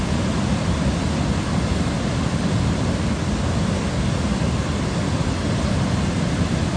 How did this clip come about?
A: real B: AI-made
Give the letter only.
A